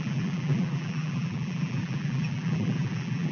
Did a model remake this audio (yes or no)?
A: yes